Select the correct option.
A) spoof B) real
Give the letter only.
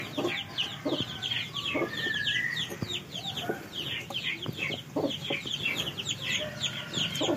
A